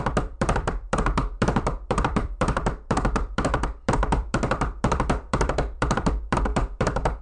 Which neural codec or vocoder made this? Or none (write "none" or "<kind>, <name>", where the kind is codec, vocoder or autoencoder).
vocoder, BigVGAN v2